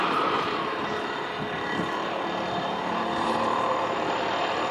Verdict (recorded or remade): recorded